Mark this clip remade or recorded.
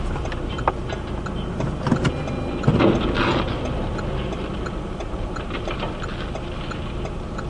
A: recorded